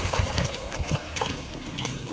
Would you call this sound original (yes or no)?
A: no